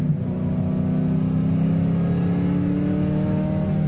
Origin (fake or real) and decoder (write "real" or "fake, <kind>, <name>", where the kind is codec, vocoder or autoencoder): real